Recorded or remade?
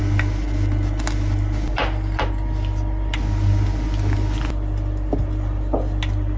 recorded